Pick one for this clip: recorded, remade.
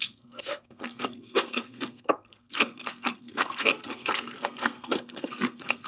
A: remade